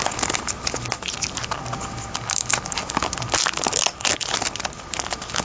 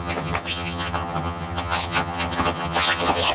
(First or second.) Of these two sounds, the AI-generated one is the second